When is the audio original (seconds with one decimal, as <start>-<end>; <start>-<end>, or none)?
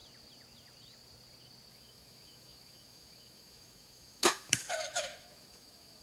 0.0-1.7